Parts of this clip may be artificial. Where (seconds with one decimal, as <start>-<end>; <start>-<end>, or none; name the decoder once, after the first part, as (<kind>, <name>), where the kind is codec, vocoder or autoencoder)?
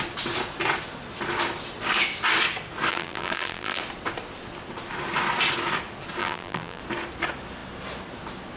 2.9-3.8 (vocoder, BigVGAN v2); 6.2-6.8